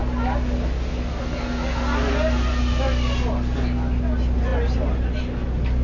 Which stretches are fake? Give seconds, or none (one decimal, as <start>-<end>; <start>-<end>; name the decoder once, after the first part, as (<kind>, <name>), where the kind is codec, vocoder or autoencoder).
none